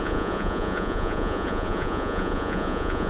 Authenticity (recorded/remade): remade